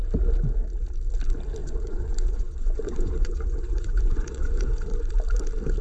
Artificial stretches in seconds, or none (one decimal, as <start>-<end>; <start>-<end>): 1.6-5.1